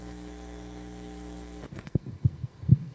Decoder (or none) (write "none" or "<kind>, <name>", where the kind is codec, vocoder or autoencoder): codec, SNAC